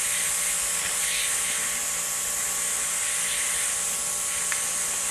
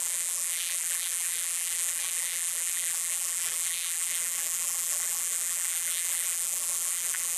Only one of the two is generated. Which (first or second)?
second